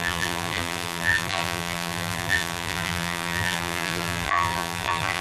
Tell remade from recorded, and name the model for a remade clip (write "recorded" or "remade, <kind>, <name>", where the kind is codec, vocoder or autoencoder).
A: remade, vocoder, BigVGAN v2